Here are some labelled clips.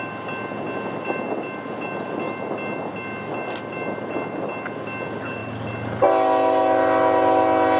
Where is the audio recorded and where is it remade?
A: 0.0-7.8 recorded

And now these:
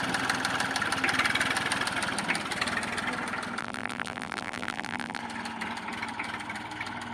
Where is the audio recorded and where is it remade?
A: 0.0-3.6 recorded; 3.6-5.2 remade; 5.2-7.1 recorded

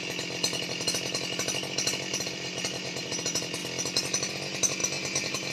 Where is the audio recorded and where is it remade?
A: 0.0-2.1 recorded; 2.1-3.1 remade; 3.1-4.8 recorded; 4.8-5.5 remade

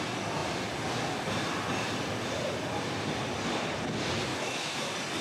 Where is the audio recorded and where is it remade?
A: 0.0-4.3 recorded; 4.3-4.8 remade; 4.8-5.2 recorded